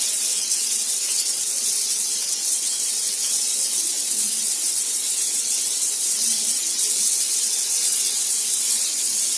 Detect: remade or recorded remade